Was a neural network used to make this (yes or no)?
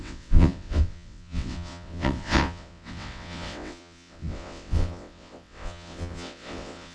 yes